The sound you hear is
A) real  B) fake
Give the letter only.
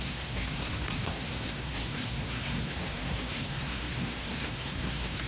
B